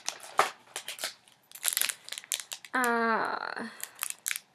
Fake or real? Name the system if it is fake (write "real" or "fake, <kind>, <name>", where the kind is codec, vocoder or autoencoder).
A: real